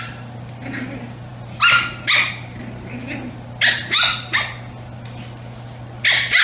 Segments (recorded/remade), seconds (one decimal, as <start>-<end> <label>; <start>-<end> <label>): 0.0-6.4 recorded